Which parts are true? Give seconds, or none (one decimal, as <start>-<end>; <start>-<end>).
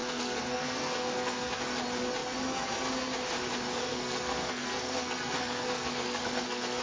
1.5-3.8